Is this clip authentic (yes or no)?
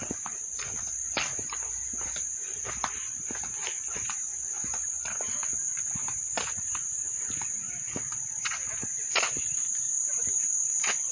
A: yes